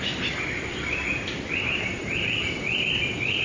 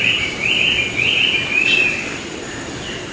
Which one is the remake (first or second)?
first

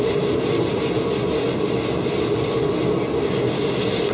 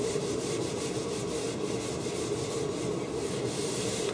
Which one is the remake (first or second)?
second